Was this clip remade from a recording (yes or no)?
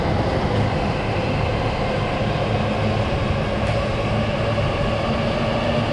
no